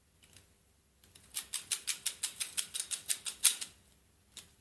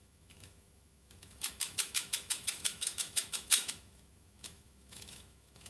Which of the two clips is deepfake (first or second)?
second